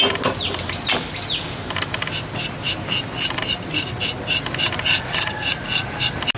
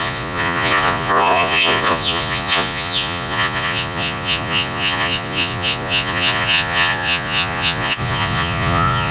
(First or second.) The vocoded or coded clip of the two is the second